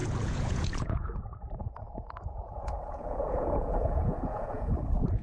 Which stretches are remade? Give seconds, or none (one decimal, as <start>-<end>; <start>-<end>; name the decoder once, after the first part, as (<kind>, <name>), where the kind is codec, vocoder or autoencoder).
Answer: 0.0-1.2 (vocoder, Vocos); 1.6-4.7